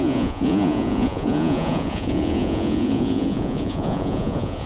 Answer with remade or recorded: remade